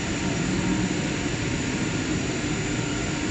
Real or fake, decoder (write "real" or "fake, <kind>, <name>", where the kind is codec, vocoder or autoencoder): fake, vocoder, BigVGAN v2